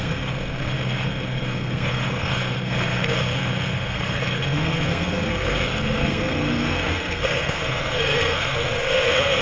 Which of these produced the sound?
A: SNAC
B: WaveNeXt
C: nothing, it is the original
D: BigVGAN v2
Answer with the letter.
A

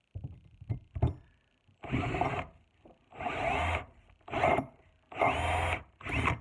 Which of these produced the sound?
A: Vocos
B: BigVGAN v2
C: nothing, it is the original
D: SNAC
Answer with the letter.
C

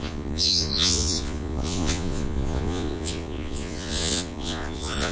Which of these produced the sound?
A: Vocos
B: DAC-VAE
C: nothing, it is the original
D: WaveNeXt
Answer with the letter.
A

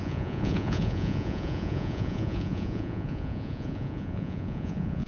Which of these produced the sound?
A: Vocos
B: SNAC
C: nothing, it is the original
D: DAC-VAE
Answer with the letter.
A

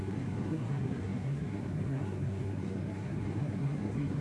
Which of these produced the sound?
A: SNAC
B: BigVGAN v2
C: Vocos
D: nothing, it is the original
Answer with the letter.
A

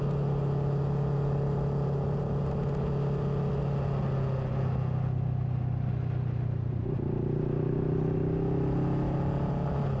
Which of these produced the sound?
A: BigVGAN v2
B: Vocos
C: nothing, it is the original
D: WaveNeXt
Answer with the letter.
C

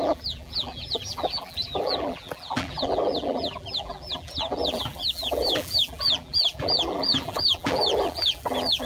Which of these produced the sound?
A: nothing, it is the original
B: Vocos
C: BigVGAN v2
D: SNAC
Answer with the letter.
C